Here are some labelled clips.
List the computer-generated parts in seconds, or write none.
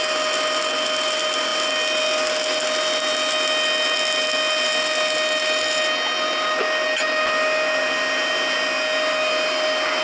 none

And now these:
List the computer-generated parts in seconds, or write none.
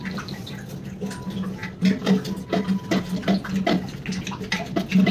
none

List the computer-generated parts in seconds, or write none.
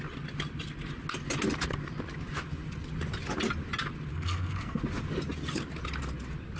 4.1-4.8 (codec, SNAC)